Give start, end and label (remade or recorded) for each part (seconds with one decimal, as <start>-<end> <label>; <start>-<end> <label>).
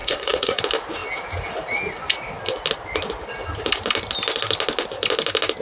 0.0-0.6 remade; 0.6-5.6 recorded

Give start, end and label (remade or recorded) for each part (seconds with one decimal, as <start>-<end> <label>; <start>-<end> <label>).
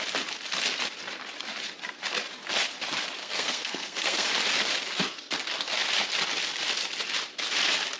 0.0-3.2 recorded; 3.2-4.3 remade; 4.3-8.0 recorded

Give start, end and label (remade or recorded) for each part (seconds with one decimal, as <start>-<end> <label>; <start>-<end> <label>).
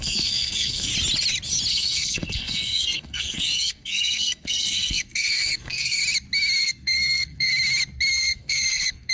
0.0-0.9 remade; 0.9-1.7 recorded; 1.7-6.0 remade; 6.0-6.6 recorded; 6.6-7.5 remade; 7.5-8.1 recorded; 8.1-9.1 remade